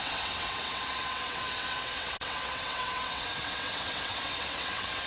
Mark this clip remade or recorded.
remade